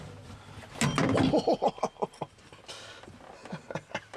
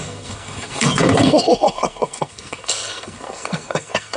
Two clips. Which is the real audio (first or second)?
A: first